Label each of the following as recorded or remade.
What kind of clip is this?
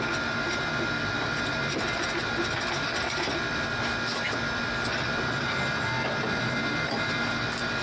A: recorded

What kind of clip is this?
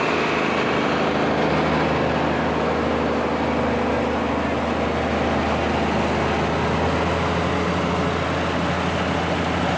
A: recorded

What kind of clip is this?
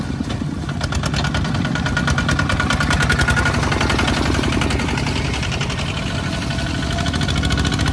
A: recorded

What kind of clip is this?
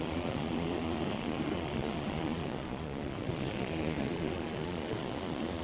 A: remade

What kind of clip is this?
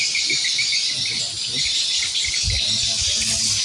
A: recorded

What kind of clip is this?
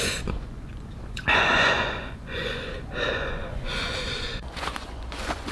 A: remade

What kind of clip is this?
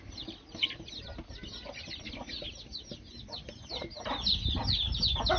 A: recorded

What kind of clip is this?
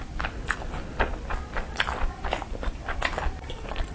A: recorded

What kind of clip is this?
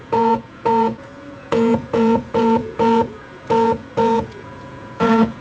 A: remade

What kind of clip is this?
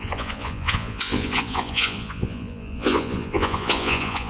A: remade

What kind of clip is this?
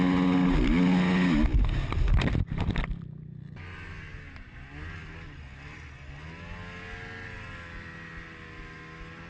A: recorded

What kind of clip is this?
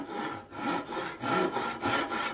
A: recorded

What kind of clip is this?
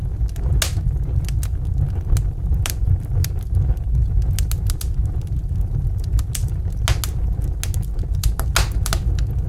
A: recorded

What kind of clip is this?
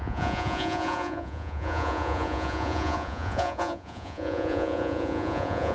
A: remade